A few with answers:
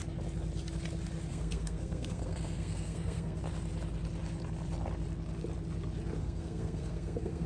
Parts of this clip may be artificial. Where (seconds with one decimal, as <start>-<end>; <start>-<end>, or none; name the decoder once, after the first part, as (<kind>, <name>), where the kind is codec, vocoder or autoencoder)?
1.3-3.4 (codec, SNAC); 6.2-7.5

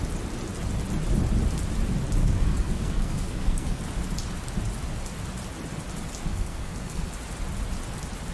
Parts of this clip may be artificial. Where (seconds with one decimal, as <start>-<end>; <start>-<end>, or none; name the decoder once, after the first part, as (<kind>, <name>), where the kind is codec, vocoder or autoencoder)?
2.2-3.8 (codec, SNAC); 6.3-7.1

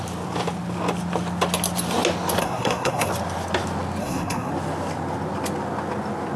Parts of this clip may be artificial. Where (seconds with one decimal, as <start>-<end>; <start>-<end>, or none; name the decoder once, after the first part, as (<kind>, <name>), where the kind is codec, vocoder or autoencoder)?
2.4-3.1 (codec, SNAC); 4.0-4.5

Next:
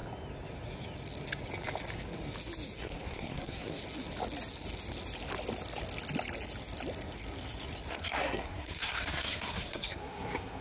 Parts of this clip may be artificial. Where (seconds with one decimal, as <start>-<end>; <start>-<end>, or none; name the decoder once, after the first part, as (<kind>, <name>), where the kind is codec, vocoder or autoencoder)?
2.8-3.8 (codec, SNAC); 7.9-10.6